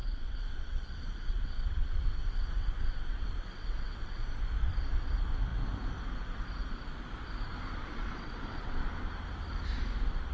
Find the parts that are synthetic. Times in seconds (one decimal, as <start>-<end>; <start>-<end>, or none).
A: 0.0-4.3; 7.8-8.8